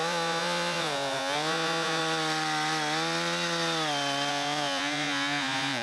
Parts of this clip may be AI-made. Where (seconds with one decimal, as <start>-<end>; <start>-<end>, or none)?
0.0-2.0; 4.3-5.8